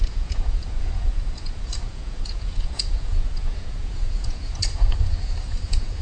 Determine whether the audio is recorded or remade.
remade